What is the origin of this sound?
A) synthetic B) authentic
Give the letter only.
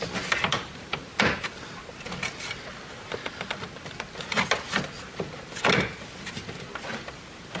B